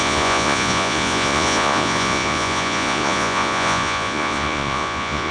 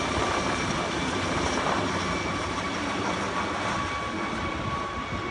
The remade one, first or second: first